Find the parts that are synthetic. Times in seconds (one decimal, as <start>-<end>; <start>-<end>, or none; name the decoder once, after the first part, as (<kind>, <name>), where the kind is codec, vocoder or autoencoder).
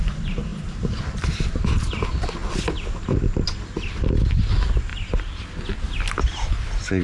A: none